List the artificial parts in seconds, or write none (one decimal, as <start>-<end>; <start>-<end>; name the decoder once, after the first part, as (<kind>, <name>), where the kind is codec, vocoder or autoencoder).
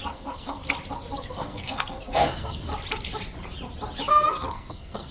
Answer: 0.0-0.6 (codec, SNAC); 1.1-2.7; 4.1-5.1